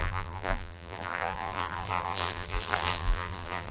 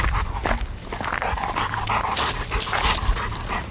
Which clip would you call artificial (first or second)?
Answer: first